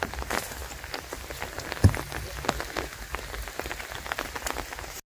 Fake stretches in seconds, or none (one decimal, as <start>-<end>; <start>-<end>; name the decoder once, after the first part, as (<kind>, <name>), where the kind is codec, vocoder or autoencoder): none